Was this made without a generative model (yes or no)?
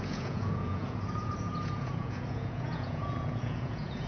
no